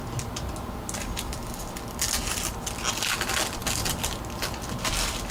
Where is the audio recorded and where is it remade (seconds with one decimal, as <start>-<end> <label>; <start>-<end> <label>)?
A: 0.0-5.3 recorded